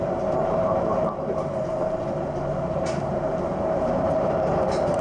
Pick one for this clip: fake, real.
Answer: fake